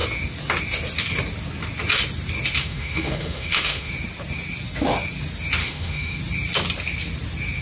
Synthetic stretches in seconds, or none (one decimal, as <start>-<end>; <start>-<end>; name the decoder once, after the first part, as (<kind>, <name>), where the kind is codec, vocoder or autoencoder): 2.6-3.9 (autoencoder, DAC-VAE); 5.6-6.2